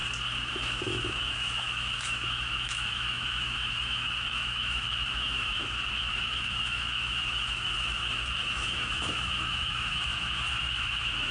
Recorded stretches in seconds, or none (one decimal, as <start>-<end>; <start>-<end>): 0.0-0.5; 5.6-6.1